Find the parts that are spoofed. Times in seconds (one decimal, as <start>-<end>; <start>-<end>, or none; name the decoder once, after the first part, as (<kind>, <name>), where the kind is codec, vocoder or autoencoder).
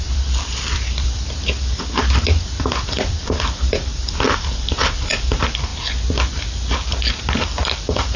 0.0-5.7 (vocoder, BigVGAN v2); 7.2-8.2